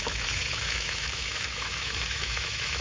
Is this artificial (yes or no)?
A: yes